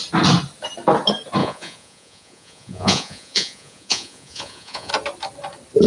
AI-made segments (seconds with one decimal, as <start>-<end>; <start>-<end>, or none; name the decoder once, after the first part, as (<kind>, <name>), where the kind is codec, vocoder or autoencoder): 1.4-4.9 (vocoder, Vocos)